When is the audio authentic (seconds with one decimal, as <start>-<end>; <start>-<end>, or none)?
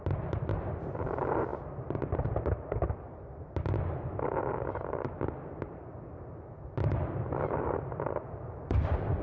0.0-9.2